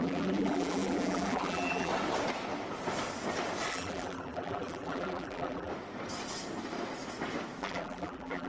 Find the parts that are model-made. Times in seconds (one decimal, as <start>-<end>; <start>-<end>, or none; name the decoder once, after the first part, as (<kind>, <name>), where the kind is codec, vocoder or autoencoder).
0.0-1.9 (vocoder, BigVGAN v2); 3.7-5.7; 7.6-8.5